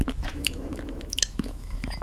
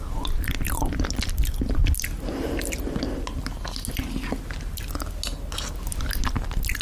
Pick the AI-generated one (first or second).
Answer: first